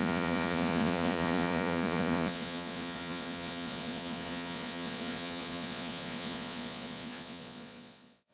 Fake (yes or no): yes